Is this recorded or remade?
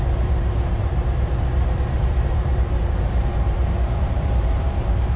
remade